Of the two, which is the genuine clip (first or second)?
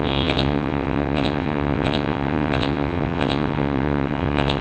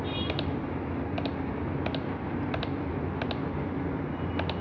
second